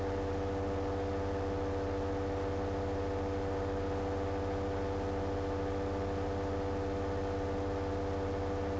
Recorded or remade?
recorded